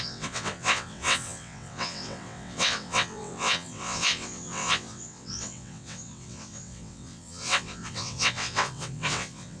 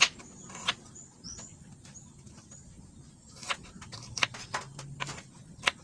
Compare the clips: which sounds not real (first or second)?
first